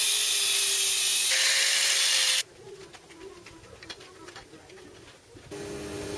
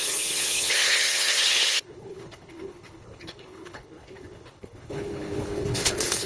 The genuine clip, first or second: first